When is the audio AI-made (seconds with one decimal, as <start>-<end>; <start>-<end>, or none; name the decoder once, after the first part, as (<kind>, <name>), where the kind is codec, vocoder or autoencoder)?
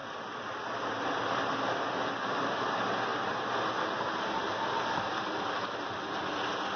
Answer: none